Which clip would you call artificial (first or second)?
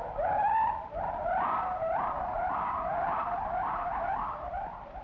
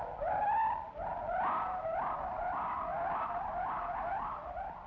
first